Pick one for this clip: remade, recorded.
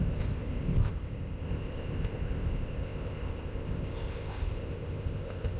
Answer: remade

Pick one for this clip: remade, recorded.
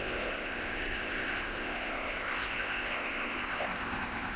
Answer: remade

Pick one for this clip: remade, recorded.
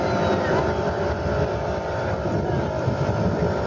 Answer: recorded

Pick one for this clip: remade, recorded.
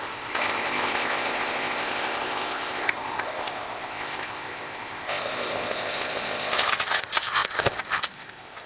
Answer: remade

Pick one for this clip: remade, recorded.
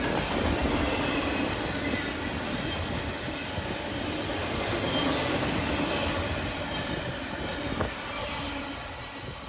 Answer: recorded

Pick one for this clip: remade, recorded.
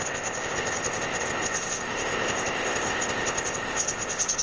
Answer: remade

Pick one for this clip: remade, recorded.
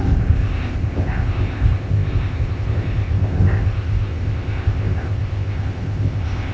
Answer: remade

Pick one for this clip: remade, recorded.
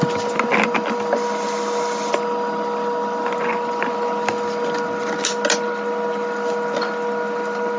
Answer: recorded